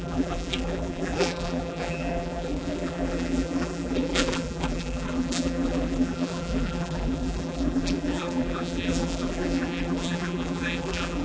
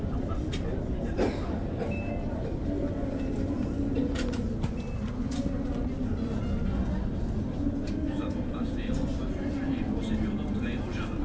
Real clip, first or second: second